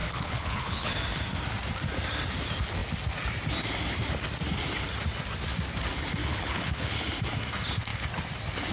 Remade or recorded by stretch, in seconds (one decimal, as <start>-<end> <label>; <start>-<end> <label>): 0.0-0.9 remade; 0.9-6.2 recorded; 6.2-7.0 remade; 7.0-8.7 recorded